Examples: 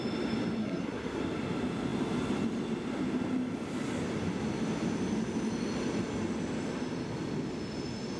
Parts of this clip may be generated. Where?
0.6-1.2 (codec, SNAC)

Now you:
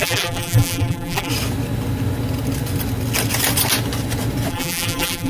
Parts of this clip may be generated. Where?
0.0-1.3 (vocoder, BigVGAN v2); 4.5-5.3

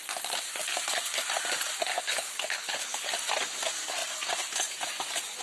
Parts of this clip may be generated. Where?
1.9-3.1 (codec, HILCodec)